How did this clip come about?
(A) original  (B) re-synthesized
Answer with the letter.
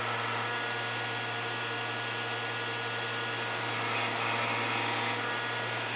A